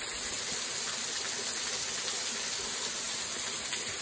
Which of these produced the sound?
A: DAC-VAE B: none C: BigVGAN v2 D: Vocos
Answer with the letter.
B